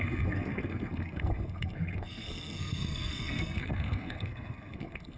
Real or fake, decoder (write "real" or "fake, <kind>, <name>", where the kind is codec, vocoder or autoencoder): fake, codec, SNAC